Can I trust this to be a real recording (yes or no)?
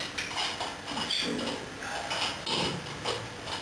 yes